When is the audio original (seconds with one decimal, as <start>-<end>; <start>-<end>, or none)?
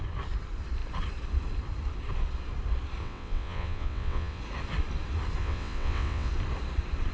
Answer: 0.0-3.0; 4.4-5.4; 6.3-7.1